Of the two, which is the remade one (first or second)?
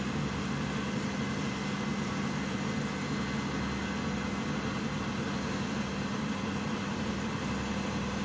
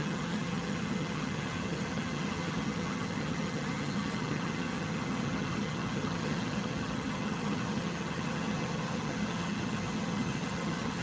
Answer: second